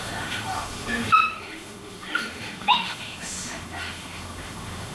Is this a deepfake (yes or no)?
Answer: yes